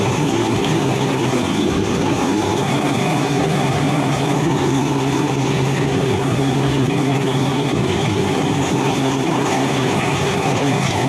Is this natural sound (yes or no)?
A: no